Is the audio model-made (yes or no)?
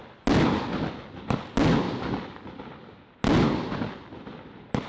no